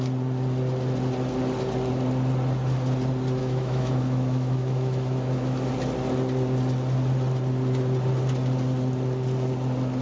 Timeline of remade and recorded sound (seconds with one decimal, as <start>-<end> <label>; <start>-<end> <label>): 0.0-3.4 recorded; 3.4-5.7 remade; 5.7-10.0 recorded